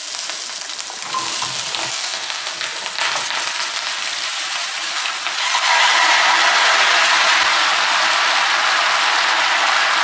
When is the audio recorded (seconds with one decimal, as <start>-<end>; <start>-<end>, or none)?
0.0-1.9; 2.5-10.0